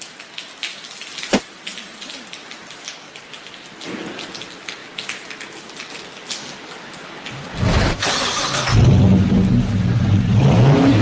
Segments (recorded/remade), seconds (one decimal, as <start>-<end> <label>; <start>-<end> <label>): 0.0-11.0 recorded